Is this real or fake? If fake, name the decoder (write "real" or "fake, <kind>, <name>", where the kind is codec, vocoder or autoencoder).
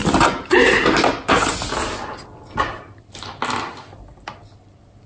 real